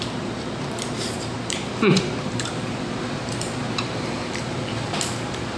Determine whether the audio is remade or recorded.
remade